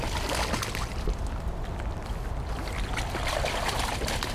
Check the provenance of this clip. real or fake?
real